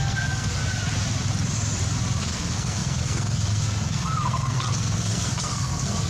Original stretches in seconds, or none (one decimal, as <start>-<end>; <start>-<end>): 0.6-2.2